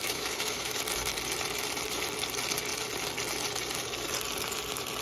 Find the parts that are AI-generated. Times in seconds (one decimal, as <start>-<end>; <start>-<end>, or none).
0.0-0.8